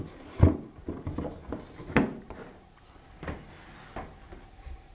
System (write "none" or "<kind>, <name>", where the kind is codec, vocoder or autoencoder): none